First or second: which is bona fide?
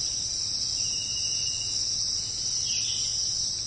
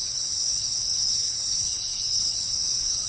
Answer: first